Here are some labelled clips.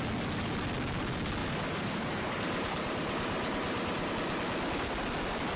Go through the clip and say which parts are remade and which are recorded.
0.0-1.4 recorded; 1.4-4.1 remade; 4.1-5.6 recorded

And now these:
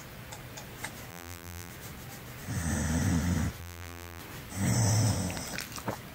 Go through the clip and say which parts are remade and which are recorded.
0.0-1.1 recorded; 1.1-1.7 remade; 1.7-3.6 recorded; 3.6-4.2 remade; 4.2-6.1 recorded

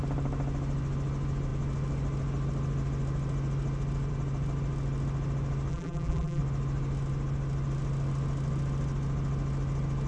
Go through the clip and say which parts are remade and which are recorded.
0.0-5.7 recorded; 5.7-6.4 remade; 6.4-10.1 recorded

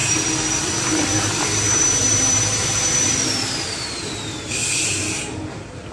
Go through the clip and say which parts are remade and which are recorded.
0.0-4.6 remade; 4.6-5.4 recorded; 5.4-5.9 remade

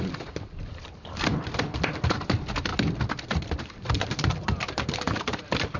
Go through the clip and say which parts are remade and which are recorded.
0.0-1.3 remade; 1.3-1.9 recorded; 1.9-2.7 remade; 2.7-3.6 recorded; 3.6-5.8 remade